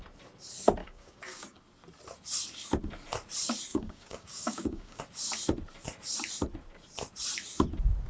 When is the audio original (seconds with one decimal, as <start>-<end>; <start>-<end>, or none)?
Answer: 0.0-0.8; 1.6-3.7; 5.0-8.1